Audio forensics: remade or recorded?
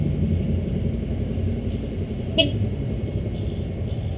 recorded